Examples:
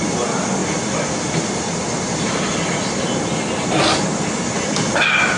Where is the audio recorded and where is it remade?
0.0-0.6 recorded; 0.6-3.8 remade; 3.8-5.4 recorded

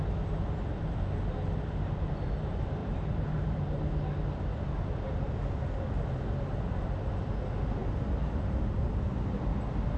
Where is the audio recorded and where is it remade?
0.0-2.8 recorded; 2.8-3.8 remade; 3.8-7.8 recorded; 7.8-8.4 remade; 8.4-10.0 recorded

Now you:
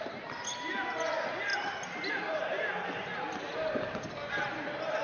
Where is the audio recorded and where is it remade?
0.0-5.0 recorded

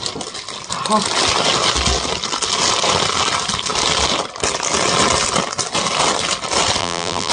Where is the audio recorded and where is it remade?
0.0-6.8 recorded; 6.8-7.3 remade

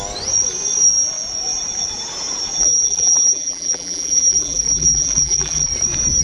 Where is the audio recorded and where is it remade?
0.0-2.6 recorded; 2.6-5.7 remade; 5.7-6.2 recorded